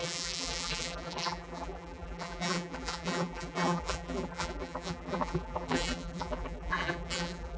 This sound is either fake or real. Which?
fake